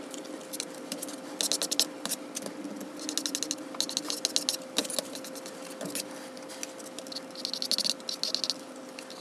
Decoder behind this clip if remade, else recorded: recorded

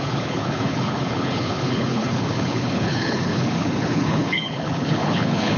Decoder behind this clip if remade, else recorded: remade, codec, HILCodec